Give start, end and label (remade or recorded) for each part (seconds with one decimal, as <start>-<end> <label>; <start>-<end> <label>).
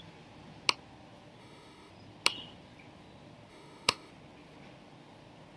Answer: 0.0-1.4 recorded; 1.4-1.9 remade; 1.9-3.5 recorded; 3.5-4.1 remade; 4.1-5.6 recorded